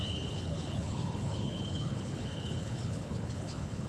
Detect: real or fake fake